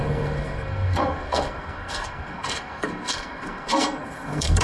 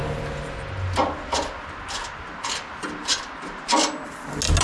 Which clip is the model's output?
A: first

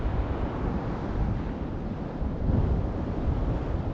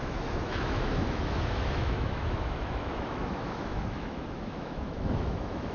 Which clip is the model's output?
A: second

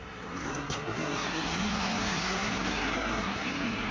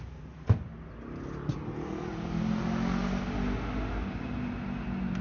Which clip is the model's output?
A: first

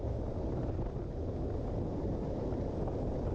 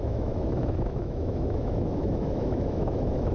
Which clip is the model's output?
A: second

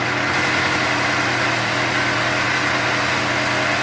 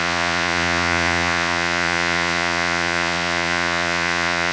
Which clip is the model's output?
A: second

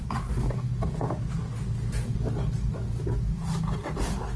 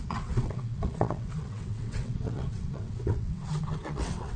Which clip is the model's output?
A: second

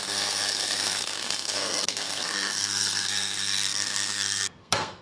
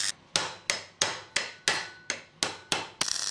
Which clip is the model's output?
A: first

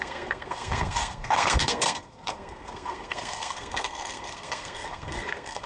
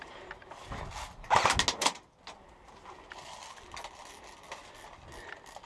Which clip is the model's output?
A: first